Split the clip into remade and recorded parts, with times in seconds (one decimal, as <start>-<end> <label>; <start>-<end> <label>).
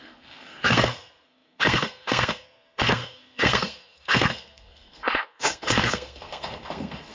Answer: 0.0-7.1 remade